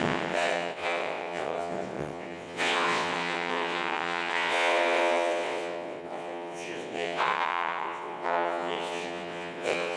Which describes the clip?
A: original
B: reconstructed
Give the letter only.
B